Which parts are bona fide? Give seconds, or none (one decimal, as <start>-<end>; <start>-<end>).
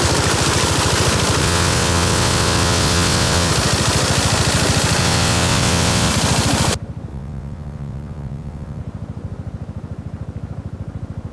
0.0-1.4; 3.5-5.0; 6.1-7.1; 8.8-11.3